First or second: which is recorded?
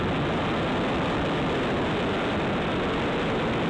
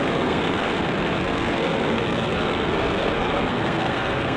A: first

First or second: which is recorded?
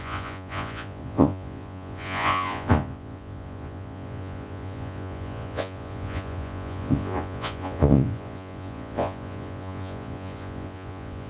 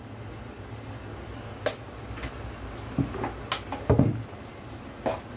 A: second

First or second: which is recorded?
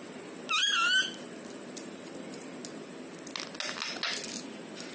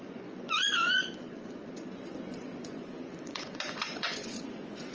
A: first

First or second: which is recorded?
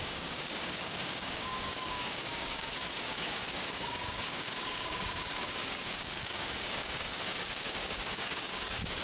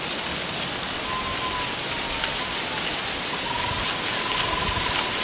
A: second